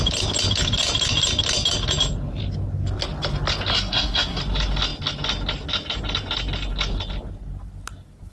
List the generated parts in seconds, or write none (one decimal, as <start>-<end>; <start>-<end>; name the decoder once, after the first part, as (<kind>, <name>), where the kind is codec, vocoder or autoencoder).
3.7-4.4 (codec, SNAC)